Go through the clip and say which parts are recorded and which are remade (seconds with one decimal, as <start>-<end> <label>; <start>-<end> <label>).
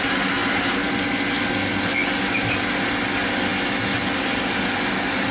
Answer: 0.0-5.3 recorded